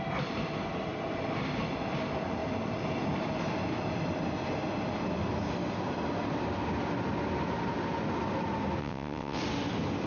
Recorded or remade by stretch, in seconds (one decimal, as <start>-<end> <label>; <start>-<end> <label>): 0.0-8.8 recorded; 8.8-9.4 remade; 9.4-10.1 recorded